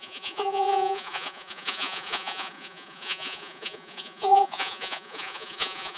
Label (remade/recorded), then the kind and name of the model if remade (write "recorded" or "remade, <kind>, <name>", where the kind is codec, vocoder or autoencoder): remade, vocoder, Vocos